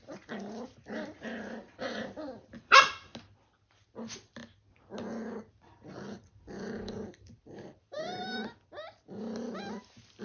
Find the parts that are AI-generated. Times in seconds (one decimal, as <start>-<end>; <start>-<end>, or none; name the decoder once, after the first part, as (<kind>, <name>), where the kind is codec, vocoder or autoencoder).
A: 0.0-3.1 (vocoder, BigVGAN v2); 5.5-8.4; 9.4-10.2